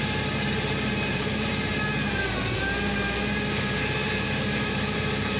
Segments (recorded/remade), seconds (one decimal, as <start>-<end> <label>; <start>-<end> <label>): 0.0-1.7 remade; 1.7-4.4 recorded; 4.4-5.4 remade